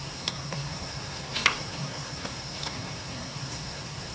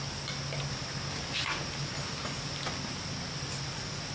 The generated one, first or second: first